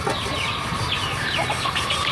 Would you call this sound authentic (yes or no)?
yes